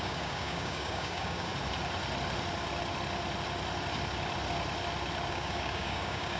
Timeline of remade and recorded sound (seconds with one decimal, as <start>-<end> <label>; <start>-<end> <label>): 0.0-1.5 remade; 1.5-5.3 recorded; 5.3-6.4 remade